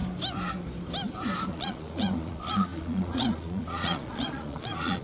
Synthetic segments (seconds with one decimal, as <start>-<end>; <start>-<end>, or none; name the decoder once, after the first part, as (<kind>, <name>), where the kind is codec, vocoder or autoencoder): 1.5-5.0 (vocoder, Vocos)